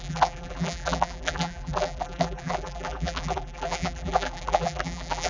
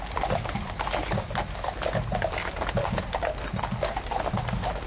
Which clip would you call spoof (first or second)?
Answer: first